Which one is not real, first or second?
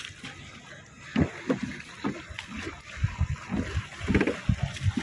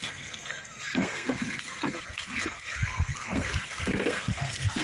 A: second